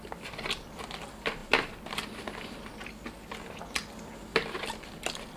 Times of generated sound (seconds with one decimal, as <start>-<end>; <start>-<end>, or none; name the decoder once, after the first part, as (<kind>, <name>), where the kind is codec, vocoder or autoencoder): none